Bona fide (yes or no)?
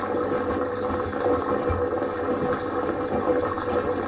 yes